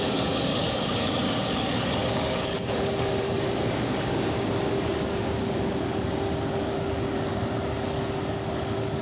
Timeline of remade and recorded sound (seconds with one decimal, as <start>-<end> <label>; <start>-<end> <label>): 0.0-9.0 remade